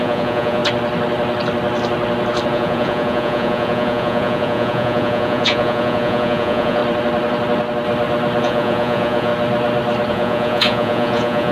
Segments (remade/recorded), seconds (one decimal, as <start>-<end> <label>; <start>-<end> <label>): 0.0-0.6 remade; 0.6-2.5 recorded; 2.5-6.8 remade; 6.8-8.4 recorded; 8.4-9.3 remade; 9.3-10.1 recorded; 10.1-11.5 remade